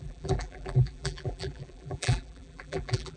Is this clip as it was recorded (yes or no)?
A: no